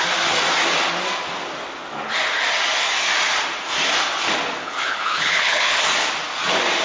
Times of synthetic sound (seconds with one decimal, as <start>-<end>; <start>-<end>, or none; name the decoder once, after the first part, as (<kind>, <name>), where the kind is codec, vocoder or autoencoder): 4.6-5.8 (codec, HILCodec)